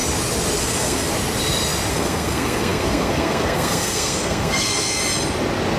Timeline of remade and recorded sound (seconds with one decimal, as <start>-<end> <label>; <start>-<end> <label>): 0.0-0.6 recorded; 0.6-1.1 remade; 1.1-1.9 recorded; 1.9-5.0 remade; 5.0-5.8 recorded